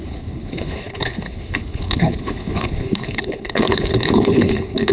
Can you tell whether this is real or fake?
fake